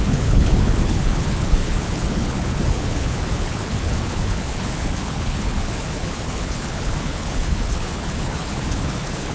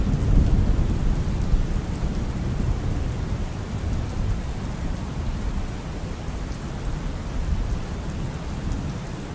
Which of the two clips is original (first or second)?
second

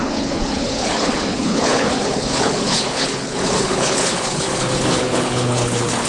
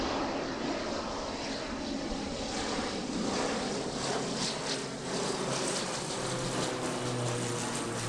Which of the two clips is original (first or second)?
second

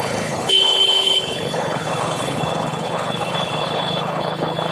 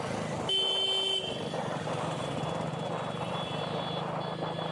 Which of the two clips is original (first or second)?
second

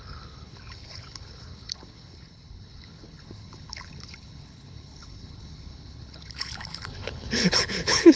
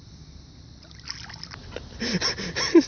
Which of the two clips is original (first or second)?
second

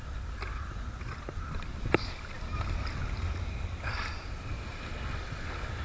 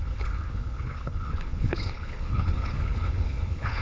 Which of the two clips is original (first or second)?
first